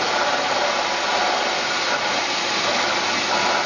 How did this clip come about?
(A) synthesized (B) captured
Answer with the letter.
B